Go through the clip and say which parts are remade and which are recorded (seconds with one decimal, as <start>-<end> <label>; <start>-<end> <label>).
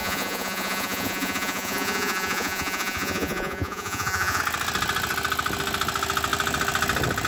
0.0-4.4 remade; 4.4-7.3 recorded